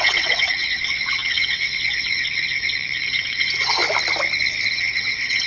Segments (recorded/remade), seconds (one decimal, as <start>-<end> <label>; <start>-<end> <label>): 0.0-3.8 remade; 3.8-4.7 recorded; 4.7-5.5 remade